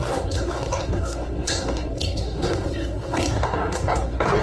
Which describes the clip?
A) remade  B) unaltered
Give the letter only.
A